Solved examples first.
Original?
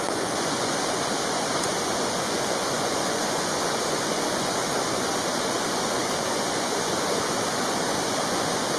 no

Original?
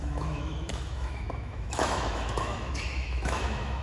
no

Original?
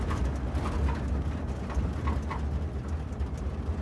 yes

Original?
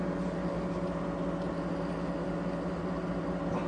yes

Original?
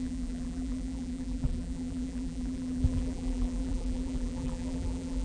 no